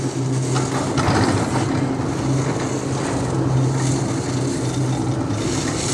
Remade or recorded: recorded